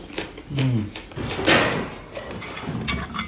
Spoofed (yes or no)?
no